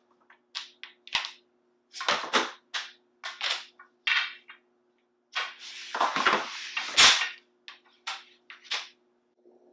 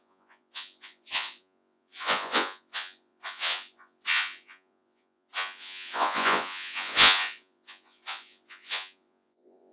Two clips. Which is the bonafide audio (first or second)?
first